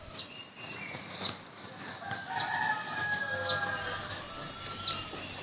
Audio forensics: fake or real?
real